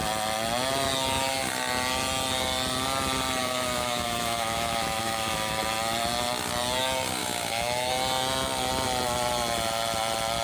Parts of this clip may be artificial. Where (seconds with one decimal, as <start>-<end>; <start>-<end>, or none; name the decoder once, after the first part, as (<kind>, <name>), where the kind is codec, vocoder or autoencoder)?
3.4-5.6 (autoencoder, DAC-VAE); 7.2-7.9